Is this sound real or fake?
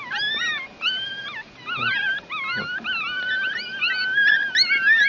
real